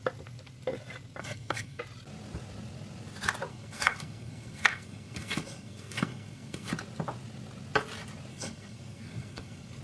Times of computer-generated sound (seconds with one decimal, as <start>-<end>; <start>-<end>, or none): 1.2-1.8; 3.5-6.7; 8.3-9.8